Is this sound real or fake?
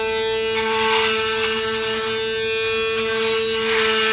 real